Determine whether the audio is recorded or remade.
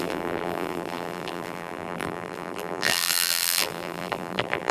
remade